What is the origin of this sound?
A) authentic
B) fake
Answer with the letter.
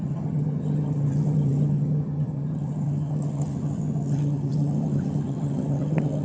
B